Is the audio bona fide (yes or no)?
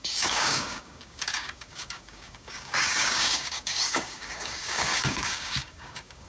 no